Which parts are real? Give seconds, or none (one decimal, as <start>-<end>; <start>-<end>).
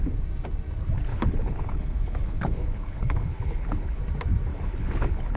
0.0-1.1; 4.0-4.5